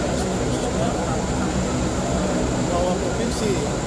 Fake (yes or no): no